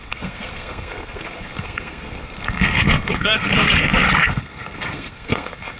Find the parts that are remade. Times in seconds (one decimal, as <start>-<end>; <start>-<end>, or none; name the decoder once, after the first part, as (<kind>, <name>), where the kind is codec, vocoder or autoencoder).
0.0-3.5 (codec, SNAC); 4.2-5.8